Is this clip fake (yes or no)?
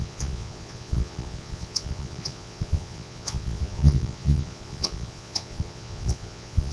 yes